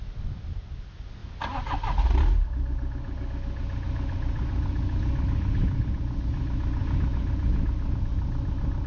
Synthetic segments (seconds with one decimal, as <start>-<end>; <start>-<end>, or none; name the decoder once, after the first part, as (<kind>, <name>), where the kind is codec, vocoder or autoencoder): none